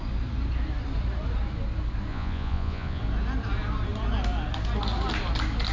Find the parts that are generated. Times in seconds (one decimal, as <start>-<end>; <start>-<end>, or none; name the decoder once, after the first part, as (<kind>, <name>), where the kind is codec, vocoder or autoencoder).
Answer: 2.1-3.0 (vocoder, Vocos)